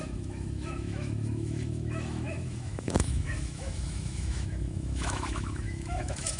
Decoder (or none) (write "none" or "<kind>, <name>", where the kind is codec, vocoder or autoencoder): autoencoder, DAC-VAE